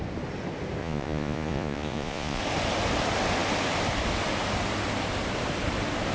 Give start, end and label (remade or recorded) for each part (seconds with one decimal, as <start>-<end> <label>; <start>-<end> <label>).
0.0-0.8 recorded; 0.8-2.4 remade; 2.4-6.1 recorded